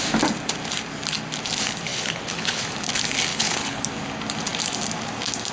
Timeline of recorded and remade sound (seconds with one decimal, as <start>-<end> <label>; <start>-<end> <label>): 0.0-1.9 recorded; 1.9-2.6 remade; 2.6-3.3 recorded; 3.3-3.8 remade; 3.8-5.5 recorded